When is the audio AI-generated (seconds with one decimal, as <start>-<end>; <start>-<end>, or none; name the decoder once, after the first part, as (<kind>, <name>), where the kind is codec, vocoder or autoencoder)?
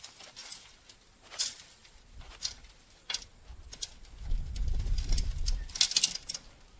none